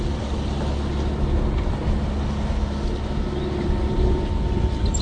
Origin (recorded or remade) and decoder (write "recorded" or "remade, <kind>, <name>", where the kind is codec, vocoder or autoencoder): recorded